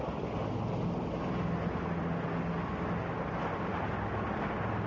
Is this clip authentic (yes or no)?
yes